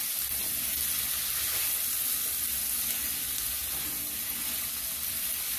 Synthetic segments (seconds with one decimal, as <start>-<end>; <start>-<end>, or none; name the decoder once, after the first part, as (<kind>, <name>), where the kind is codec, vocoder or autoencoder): none